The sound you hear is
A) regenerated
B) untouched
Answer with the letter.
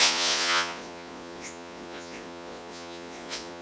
A